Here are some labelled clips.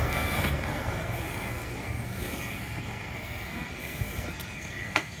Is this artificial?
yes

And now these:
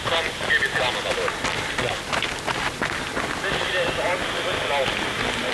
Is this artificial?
no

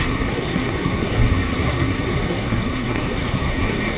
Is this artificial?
yes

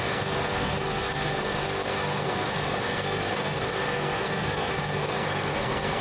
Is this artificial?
yes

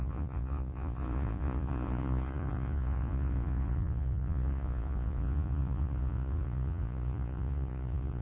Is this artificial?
yes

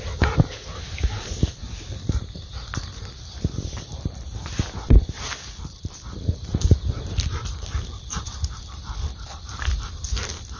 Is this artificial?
yes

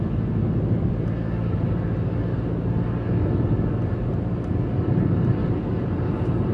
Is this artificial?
no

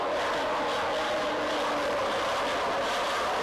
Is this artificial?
no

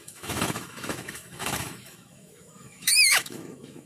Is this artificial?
yes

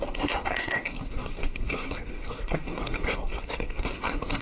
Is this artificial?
yes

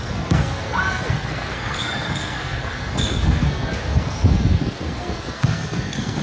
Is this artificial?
yes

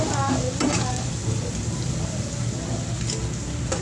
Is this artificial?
no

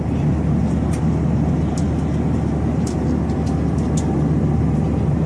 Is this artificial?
no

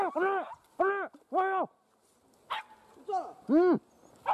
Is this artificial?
no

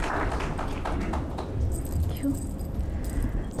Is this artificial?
no